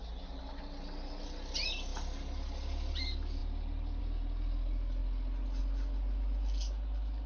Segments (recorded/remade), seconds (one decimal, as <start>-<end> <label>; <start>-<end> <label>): 0.0-7.3 recorded

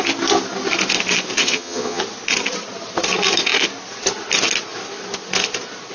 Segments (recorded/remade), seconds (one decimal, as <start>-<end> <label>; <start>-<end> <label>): 0.0-1.4 recorded; 1.4-2.0 remade; 2.0-5.9 recorded

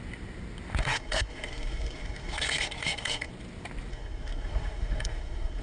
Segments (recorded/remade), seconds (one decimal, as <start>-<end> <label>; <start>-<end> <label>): 0.0-0.8 recorded; 0.8-3.3 remade; 3.3-3.9 recorded; 3.9-5.6 remade

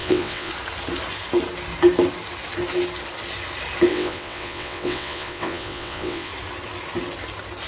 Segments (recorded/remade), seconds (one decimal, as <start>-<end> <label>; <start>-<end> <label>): 0.0-0.5 remade; 0.5-3.9 recorded; 3.9-6.3 remade; 6.3-7.7 recorded